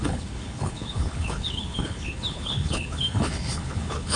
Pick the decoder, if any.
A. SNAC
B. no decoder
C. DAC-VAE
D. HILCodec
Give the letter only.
D